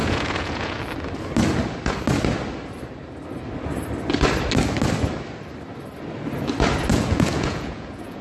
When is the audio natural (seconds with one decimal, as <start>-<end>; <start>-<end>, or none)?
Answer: 0.8-6.9